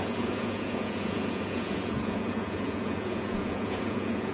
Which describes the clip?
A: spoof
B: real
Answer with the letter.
A